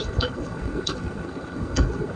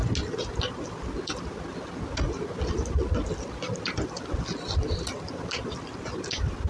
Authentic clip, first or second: second